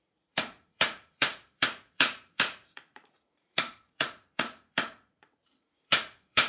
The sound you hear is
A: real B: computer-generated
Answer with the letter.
B